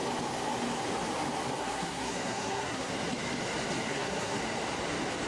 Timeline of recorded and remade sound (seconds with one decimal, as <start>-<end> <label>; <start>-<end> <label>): 0.0-1.6 recorded; 1.6-2.9 remade; 2.9-3.9 recorded; 3.9-4.4 remade; 4.4-5.3 recorded